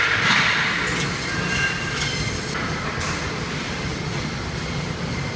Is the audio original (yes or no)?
yes